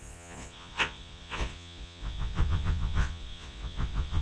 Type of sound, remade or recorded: remade